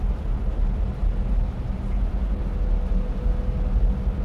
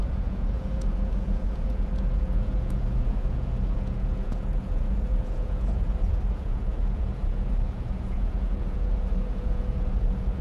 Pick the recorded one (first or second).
first